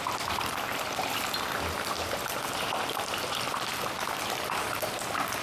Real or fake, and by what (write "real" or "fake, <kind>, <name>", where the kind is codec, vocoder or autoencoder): fake, vocoder, BigVGAN v2